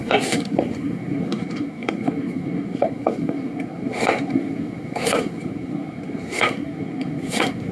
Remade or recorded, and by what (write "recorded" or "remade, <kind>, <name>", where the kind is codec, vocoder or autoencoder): remade, codec, SNAC